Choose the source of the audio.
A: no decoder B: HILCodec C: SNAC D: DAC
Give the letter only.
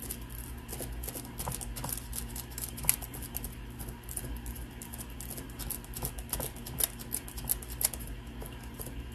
A